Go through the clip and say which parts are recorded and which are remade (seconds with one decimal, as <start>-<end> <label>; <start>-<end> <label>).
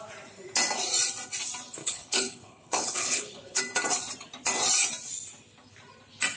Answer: 0.0-1.8 recorded; 1.8-3.6 remade; 3.6-6.4 recorded